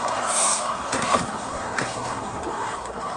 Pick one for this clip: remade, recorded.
remade